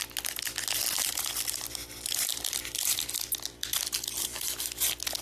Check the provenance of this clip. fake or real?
real